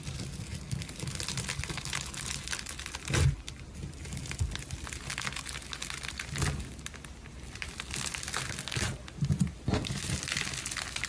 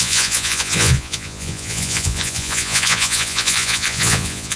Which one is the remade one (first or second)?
second